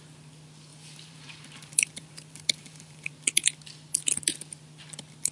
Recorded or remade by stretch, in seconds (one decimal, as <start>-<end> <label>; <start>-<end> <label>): 0.0-0.7 recorded; 0.7-3.1 remade; 3.1-5.3 recorded